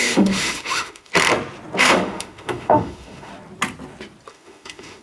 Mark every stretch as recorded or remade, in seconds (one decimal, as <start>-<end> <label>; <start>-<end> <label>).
0.0-1.1 remade; 1.1-1.8 recorded; 1.8-3.3 remade; 3.3-4.3 recorded; 4.3-5.0 remade